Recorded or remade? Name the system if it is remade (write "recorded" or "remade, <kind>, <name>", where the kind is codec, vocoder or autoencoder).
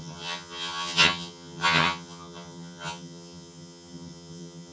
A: remade, vocoder, HiFi-GAN